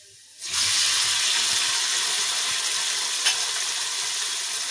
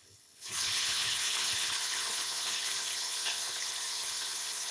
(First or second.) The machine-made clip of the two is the second